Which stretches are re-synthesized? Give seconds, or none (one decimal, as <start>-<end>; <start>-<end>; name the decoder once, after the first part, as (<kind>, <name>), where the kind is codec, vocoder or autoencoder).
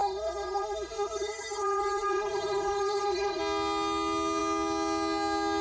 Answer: 0.0-3.4 (codec, SNAC)